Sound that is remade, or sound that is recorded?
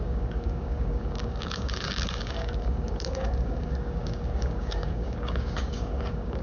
remade